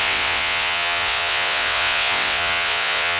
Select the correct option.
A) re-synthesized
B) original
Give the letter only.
A